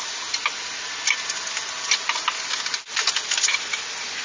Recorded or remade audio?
recorded